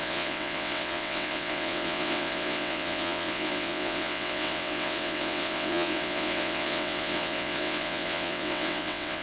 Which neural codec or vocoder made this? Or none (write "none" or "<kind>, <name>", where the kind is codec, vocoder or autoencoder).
vocoder, WaveNeXt